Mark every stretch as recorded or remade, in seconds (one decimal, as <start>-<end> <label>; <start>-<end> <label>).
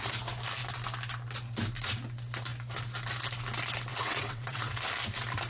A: 0.0-3.9 recorded; 3.9-4.7 remade; 4.7-5.5 recorded